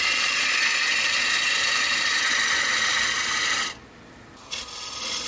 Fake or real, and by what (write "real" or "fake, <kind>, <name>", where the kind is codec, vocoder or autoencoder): real